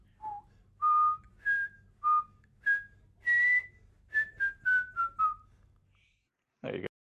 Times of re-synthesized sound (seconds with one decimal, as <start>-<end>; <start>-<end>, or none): none